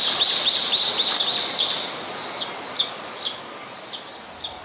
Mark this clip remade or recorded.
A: recorded